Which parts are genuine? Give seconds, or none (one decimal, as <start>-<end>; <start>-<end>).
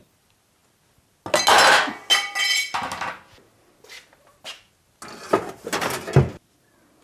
0.0-7.0